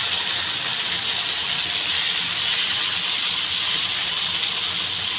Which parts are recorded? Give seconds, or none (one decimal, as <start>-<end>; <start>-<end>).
0.0-5.2